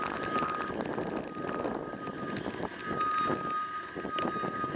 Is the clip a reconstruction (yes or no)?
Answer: no